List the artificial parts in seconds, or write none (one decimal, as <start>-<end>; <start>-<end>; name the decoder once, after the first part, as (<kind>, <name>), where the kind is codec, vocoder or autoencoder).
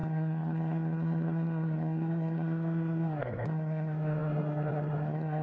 0.0-5.4 (codec, SNAC)